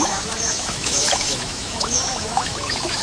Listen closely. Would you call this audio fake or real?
fake